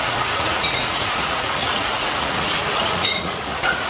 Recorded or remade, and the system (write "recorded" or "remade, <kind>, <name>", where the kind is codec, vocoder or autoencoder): remade, vocoder, Vocos